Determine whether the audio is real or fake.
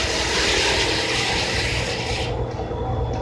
real